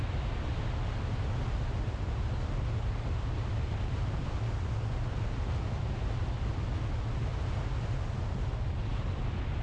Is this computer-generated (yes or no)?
no